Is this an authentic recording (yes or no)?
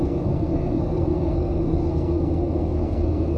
no